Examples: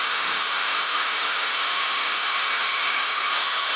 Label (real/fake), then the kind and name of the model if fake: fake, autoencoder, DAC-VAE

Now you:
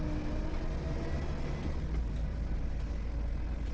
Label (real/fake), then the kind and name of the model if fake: real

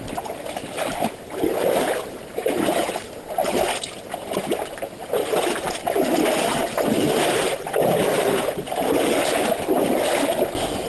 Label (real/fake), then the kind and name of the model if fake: real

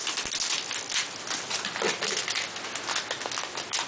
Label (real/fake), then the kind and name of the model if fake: real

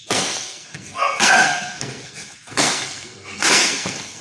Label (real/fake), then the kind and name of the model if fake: fake, codec, SNAC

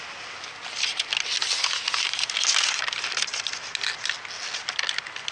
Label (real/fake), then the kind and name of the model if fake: real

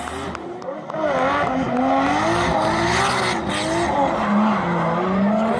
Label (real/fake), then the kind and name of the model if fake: real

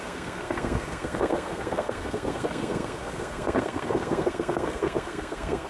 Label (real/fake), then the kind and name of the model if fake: fake, codec, SNAC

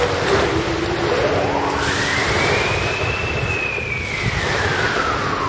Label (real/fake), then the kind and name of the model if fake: real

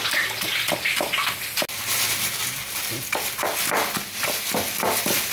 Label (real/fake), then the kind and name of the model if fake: real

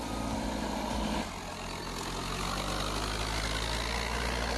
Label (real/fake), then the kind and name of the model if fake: real